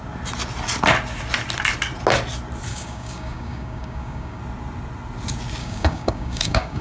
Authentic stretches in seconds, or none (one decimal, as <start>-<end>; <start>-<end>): 0.0-2.7; 4.4-5.6